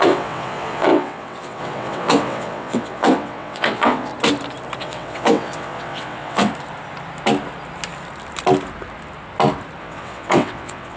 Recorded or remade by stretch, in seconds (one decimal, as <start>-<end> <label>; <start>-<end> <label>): 0.0-4.1 remade; 4.1-4.8 recorded; 4.8-6.5 remade; 6.5-9.8 recorded; 9.8-11.0 remade